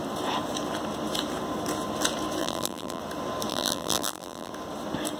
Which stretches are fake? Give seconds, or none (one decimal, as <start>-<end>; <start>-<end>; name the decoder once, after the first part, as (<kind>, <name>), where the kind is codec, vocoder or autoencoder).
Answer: 2.4-3.0 (vocoder, BigVGAN v2); 3.5-4.5